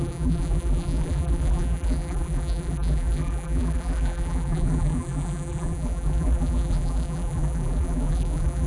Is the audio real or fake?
fake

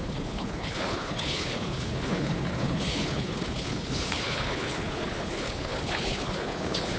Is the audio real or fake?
fake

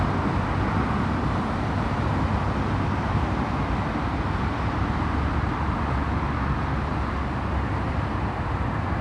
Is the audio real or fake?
real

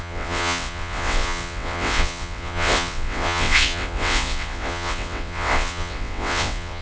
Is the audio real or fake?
fake